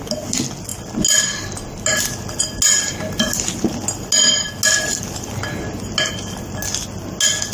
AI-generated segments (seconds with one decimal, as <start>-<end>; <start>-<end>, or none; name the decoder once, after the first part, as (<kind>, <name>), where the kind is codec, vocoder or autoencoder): none

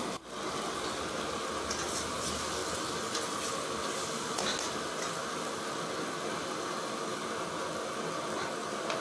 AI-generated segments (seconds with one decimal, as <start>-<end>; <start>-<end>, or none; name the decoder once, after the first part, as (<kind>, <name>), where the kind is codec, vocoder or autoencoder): none

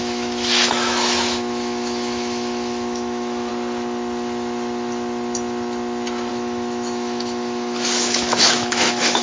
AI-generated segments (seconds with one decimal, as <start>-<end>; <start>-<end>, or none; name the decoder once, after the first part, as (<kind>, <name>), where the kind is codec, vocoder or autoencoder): 0.0-3.5 (autoencoder, DAC-VAE); 6.3-9.2

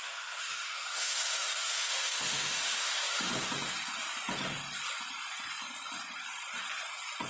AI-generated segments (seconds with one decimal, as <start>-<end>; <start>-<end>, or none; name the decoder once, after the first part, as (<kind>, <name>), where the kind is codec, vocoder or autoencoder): 0.0-3.3 (autoencoder, DAC-VAE)

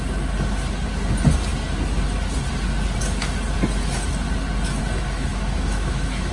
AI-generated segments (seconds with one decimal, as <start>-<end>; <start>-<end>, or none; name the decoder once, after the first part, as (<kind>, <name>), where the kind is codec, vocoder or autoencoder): 5.3-6.3 (autoencoder, DAC-VAE)